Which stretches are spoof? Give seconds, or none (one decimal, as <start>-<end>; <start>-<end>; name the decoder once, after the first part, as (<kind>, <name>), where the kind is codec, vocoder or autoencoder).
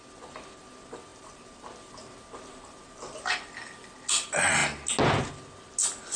1.1-3.5 (vocoder, BigVGAN v2)